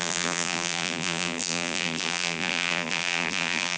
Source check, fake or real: fake